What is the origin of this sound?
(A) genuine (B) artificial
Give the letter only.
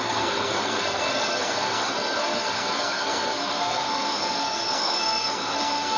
B